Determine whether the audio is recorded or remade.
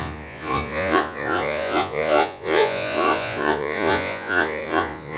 remade